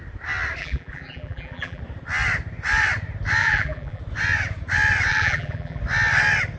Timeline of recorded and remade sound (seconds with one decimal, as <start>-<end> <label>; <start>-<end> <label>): 0.0-0.6 recorded; 0.6-1.8 remade; 1.8-3.4 recorded; 3.4-4.0 remade; 4.0-5.1 recorded; 5.1-5.8 remade; 5.8-6.6 recorded